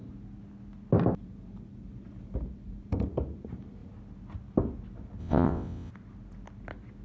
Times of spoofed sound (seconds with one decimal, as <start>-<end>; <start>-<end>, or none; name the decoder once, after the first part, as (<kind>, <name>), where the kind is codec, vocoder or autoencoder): 5.2-5.9 (vocoder, WaveNeXt)